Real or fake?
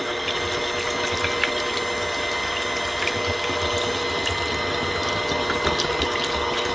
real